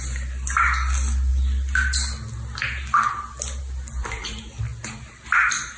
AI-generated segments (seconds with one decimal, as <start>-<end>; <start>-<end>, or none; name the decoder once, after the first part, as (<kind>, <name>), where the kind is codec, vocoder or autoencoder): none